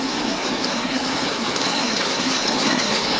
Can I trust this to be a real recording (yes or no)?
no